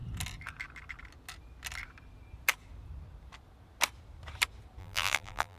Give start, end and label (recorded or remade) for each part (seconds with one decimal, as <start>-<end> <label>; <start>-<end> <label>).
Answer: 0.0-4.8 recorded; 4.8-5.6 remade